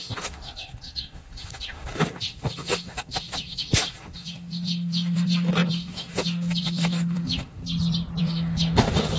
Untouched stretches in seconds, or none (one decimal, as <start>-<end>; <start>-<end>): 7.6-8.2